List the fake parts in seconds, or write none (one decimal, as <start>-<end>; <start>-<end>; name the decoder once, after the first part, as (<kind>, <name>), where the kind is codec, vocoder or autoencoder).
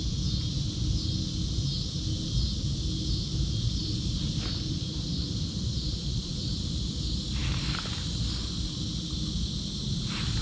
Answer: 3.8-6.6 (vocoder, BigVGAN v2)